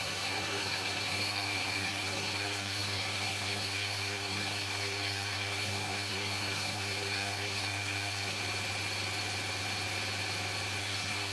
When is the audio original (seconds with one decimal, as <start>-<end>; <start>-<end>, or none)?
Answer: 8.4-10.8